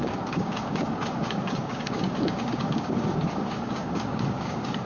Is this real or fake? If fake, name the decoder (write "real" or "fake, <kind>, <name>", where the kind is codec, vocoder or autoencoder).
fake, codec, DAC